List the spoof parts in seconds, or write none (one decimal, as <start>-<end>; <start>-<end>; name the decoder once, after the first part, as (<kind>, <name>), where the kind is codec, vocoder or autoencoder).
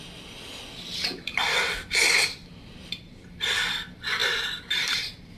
2.0-2.9 (vocoder, BigVGAN v2); 4.2-5.0